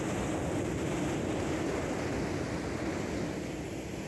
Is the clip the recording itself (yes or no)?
yes